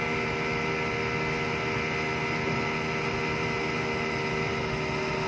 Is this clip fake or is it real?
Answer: real